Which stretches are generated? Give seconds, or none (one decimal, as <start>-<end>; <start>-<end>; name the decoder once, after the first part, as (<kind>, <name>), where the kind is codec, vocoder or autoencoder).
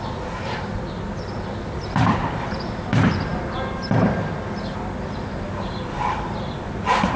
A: none